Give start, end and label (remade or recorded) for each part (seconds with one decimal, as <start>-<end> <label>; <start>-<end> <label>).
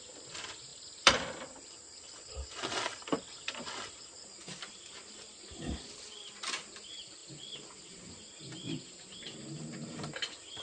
0.0-0.7 recorded; 0.7-4.6 remade; 4.6-10.6 recorded